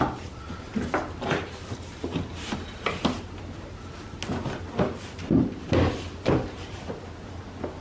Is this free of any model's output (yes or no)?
yes